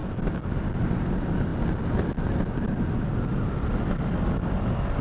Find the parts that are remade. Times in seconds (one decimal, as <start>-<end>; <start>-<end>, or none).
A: none